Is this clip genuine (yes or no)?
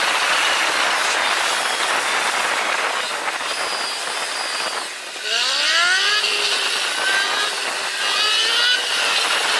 yes